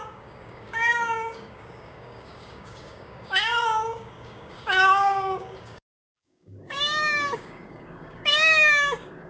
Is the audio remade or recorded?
remade